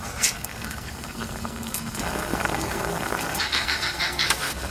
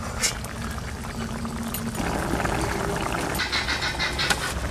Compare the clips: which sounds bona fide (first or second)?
second